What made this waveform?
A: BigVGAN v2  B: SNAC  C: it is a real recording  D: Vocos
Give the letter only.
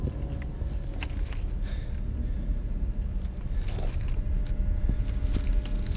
C